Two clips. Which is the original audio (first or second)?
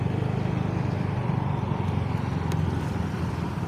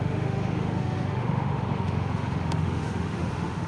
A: first